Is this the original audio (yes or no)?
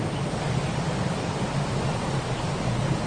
yes